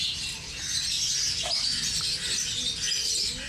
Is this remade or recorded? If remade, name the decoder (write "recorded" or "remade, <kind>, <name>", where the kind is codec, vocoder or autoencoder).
recorded